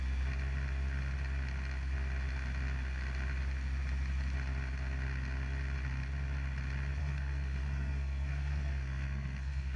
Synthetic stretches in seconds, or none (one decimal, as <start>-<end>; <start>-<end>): 7.0-9.8